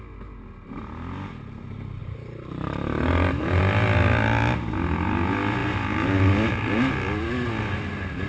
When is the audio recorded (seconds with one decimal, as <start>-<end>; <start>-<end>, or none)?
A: 0.0-2.0; 3.6-5.6; 6.9-8.3